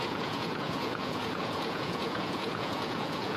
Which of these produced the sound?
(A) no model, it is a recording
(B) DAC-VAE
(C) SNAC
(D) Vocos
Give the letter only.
D